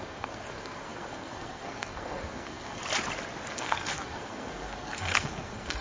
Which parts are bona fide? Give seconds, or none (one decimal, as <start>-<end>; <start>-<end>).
2.8-3.5